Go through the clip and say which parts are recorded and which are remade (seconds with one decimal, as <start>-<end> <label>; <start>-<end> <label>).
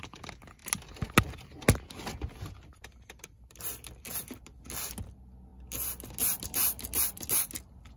0.0-8.0 recorded